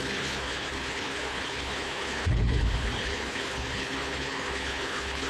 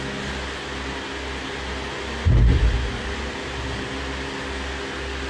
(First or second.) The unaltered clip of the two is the second